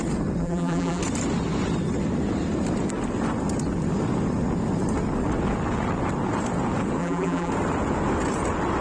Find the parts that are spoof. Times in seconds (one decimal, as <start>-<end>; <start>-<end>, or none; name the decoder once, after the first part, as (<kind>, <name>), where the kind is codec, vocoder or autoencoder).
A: 0.4-1.0 (vocoder, BigVGAN v2); 7.0-7.5